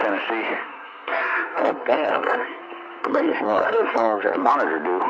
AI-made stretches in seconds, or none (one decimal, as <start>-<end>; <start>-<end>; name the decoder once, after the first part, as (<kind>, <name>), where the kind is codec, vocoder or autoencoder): 0.6-2.6 (codec, SNAC); 3.0-4.5